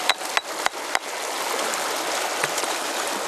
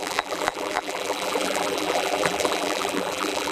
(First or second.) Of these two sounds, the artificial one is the second